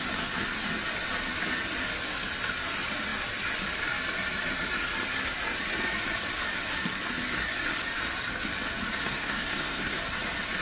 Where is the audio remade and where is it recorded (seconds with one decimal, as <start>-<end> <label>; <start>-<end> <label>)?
0.0-9.0 recorded; 9.0-10.0 remade; 10.0-10.6 recorded